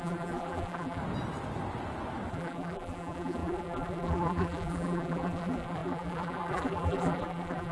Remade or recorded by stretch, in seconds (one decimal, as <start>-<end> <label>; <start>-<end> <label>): 0.0-1.0 remade; 1.0-2.3 recorded; 2.3-7.7 remade